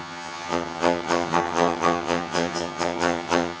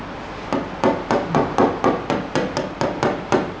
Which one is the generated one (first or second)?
first